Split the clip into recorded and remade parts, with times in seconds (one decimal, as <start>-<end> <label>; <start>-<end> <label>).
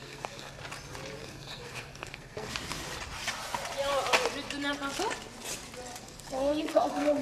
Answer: 0.0-0.6 remade; 0.6-1.2 recorded; 1.2-2.5 remade; 2.5-6.0 recorded; 6.0-7.2 remade